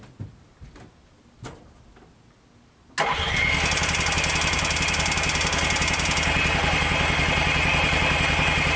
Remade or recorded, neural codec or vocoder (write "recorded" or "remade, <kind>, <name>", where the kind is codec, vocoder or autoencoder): recorded